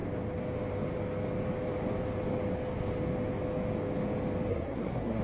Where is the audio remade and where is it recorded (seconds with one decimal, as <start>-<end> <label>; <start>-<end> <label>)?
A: 0.0-4.5 recorded; 4.5-5.2 remade